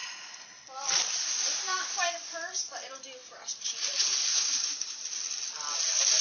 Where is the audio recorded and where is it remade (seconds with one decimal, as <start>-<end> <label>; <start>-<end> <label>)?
0.0-4.3 recorded; 4.3-5.0 remade; 5.0-6.2 recorded